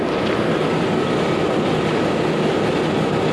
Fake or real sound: real